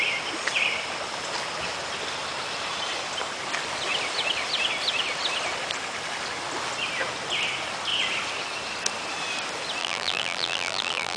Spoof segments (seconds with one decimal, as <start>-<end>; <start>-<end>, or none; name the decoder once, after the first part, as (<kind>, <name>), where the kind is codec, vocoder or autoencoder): 9.8-11.2 (vocoder, BigVGAN v2)